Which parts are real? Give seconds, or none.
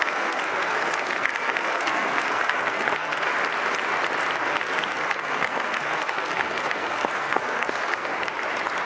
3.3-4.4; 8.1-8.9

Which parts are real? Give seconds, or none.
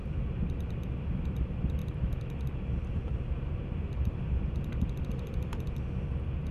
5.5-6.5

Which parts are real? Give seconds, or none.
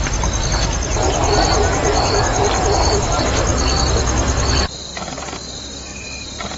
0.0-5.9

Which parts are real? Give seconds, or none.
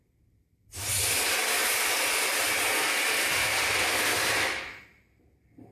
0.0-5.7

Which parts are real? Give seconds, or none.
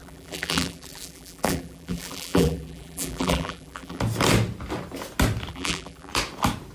4.0-5.5; 6.1-6.7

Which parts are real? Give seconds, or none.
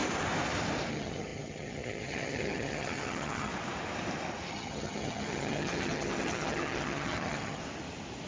0.0-0.9; 3.5-4.5; 7.6-8.3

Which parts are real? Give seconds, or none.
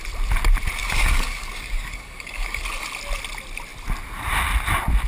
0.0-0.8; 2.6-5.1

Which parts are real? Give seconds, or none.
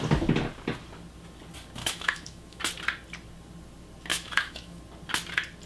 0.0-1.8; 2.6-4.1; 4.8-5.7